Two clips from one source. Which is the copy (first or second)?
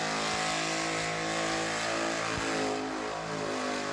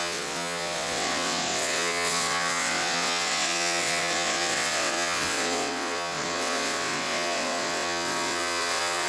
second